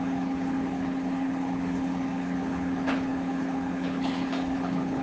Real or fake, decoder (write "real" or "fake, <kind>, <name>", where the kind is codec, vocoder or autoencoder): fake, codec, HILCodec